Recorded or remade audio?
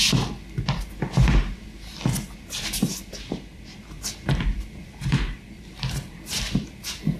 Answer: recorded